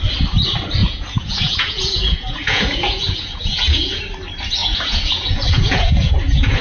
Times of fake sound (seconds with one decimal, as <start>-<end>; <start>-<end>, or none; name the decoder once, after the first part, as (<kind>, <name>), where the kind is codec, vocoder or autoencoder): 0.8-4.0 (vocoder, Vocos); 4.6-6.6